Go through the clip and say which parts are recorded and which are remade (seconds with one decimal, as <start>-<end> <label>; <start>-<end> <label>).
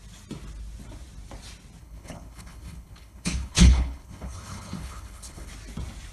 0.0-1.8 recorded; 1.8-5.5 remade; 5.5-6.1 recorded